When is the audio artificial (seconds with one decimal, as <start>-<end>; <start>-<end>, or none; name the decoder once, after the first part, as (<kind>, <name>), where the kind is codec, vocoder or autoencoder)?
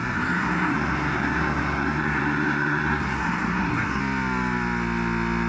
0.0-4.0 (codec, SNAC)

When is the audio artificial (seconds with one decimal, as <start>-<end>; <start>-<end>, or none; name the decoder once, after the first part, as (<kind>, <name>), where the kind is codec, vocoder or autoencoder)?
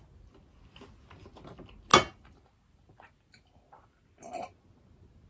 none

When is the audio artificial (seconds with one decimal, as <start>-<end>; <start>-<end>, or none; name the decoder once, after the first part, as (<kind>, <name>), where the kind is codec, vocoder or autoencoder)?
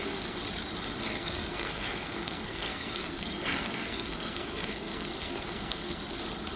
0.0-0.4 (codec, SNAC); 1.0-6.0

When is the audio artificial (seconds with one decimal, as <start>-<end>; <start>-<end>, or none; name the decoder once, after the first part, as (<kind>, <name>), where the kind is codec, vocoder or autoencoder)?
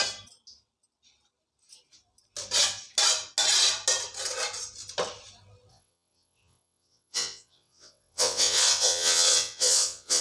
5.7-10.2 (vocoder, WaveNeXt)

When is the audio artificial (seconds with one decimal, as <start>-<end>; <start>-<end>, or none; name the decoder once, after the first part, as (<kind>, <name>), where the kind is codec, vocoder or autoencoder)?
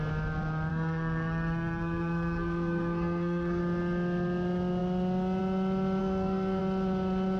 0.7-3.6 (codec, SNAC); 6.0-6.6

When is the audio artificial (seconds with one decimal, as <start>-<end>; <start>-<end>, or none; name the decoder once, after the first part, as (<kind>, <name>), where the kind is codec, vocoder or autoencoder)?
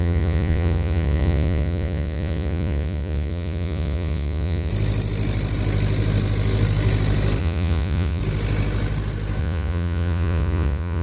0.0-4.7 (vocoder, Vocos); 7.4-8.2; 9.4-11.0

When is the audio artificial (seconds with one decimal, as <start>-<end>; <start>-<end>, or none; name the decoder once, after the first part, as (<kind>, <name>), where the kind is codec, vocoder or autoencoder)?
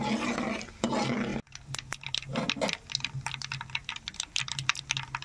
none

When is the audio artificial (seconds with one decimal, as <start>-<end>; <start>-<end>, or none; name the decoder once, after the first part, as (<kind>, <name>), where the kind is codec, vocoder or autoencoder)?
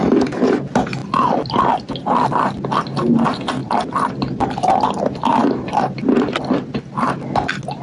3.6-4.1 (vocoder, BigVGAN v2); 5.4-6.4